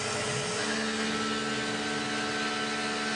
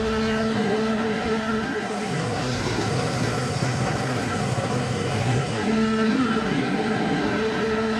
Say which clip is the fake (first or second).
second